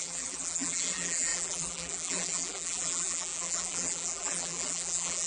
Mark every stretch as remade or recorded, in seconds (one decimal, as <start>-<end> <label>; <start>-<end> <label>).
0.0-5.3 remade